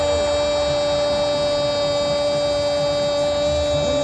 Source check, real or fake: real